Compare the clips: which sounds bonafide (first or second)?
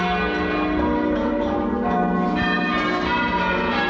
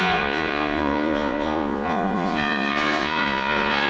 first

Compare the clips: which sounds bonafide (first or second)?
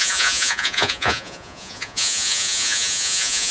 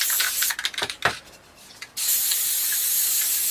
second